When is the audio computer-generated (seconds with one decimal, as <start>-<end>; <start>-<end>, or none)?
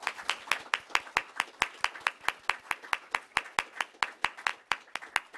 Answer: none